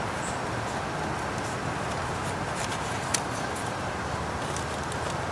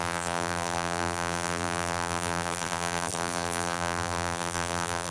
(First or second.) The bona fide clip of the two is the first